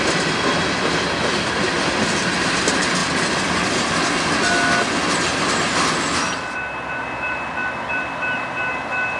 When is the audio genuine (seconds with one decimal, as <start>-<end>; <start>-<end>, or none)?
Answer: 0.0-9.2